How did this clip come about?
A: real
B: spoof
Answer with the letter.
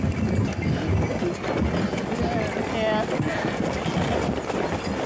A